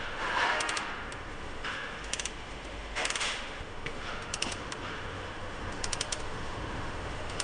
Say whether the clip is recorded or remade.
remade